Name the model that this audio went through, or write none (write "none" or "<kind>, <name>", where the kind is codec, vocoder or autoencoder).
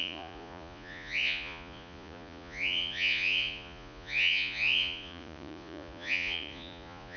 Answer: vocoder, Vocos